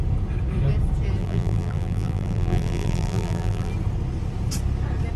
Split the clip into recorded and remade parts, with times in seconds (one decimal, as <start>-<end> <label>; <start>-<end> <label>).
0.0-1.2 recorded; 1.2-3.7 remade; 3.7-5.2 recorded